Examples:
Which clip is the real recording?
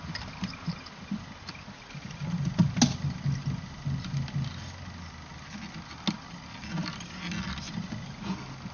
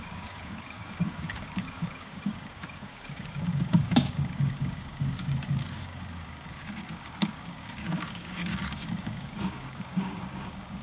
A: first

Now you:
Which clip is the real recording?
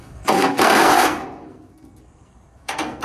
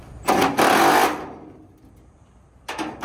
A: second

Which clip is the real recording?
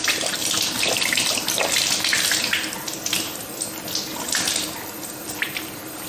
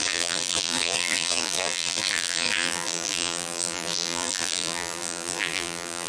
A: first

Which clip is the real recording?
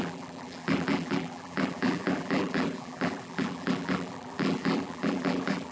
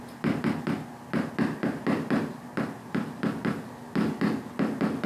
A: second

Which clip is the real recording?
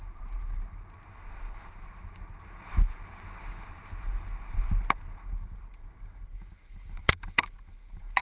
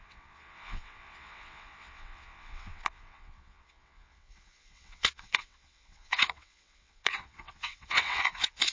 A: first